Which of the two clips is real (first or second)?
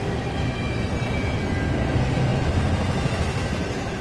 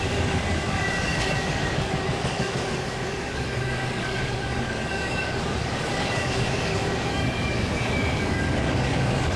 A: first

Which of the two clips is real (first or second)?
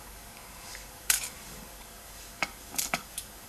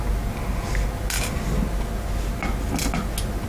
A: second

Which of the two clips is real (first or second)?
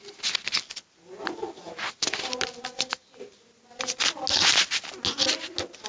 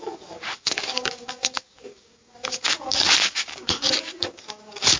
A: first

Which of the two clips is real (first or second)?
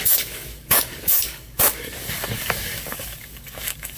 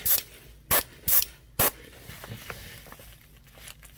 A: second